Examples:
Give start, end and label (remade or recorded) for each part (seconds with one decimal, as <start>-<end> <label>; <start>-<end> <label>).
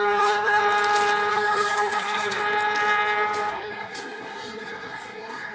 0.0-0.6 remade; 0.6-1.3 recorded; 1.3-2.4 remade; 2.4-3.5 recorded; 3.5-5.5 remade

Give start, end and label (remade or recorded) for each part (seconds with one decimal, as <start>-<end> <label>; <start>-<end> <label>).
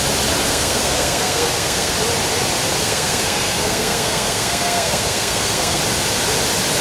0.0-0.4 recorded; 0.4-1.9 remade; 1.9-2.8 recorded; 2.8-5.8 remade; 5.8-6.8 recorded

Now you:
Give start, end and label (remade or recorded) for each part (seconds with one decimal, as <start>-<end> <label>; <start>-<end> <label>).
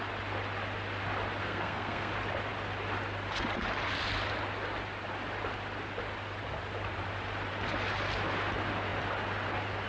0.0-1.4 recorded; 1.4-2.1 remade; 2.1-9.9 recorded